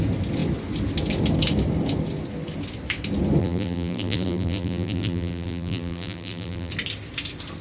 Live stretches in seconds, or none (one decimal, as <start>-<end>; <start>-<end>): 0.0-3.4; 6.7-7.6